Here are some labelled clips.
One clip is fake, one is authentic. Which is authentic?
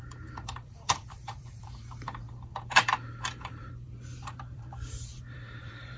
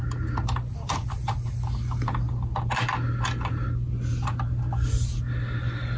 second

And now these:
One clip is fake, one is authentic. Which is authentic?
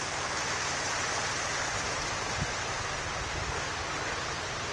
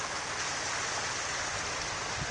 first